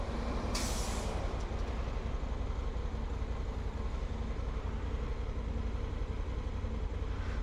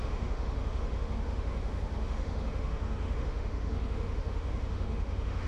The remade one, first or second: second